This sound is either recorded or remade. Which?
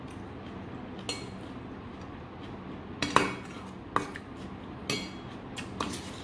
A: recorded